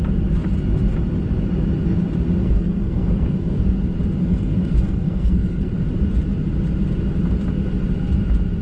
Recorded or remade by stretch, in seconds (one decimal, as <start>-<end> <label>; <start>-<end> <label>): 0.0-2.4 recorded; 2.4-3.6 remade; 3.6-4.2 recorded; 4.2-5.7 remade; 5.7-8.6 recorded